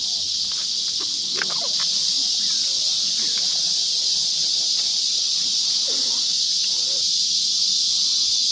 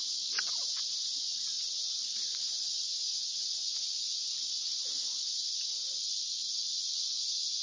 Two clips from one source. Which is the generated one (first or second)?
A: second